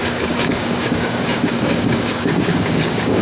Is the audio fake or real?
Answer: fake